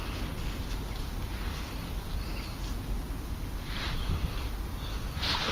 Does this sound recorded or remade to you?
recorded